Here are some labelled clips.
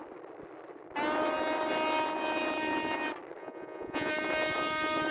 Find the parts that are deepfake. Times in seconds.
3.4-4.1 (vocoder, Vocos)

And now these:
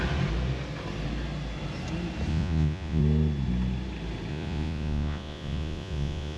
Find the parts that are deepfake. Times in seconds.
2.3-3.0 (vocoder, Vocos); 4.3-6.4

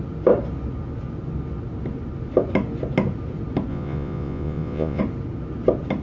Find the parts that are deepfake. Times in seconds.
3.7-5.0 (vocoder, Vocos)

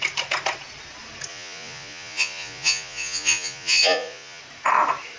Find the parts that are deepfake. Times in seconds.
1.3-4.4 (vocoder, Vocos)